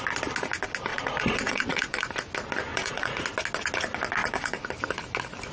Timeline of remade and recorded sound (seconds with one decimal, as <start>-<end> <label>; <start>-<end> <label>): 0.0-0.9 recorded; 0.9-2.1 remade; 2.1-2.7 recorded; 2.7-3.2 remade; 3.2-4.2 recorded; 4.2-4.7 remade; 4.7-5.5 recorded